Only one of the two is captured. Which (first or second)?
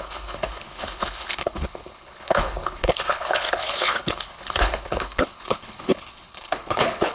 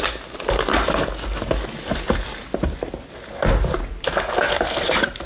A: second